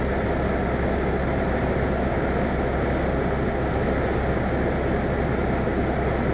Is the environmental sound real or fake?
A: real